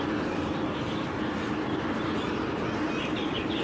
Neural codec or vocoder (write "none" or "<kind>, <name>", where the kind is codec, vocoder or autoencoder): none